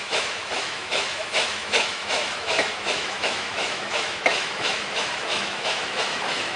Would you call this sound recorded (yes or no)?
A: no